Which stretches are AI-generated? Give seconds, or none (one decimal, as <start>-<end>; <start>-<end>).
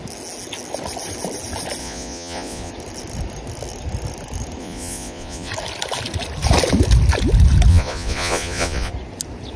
1.8-2.7; 4.6-5.5; 7.7-8.9